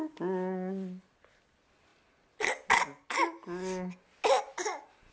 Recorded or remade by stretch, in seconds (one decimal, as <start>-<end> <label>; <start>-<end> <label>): 0.0-5.1 recorded